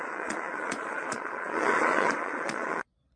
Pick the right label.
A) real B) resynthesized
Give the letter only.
B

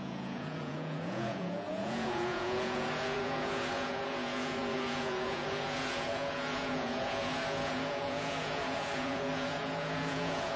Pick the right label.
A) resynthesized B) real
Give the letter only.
A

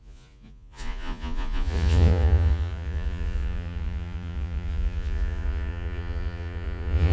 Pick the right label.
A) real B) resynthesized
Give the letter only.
B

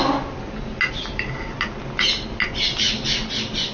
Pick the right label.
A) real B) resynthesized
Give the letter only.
A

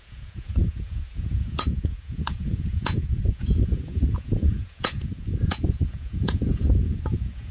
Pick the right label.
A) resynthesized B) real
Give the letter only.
A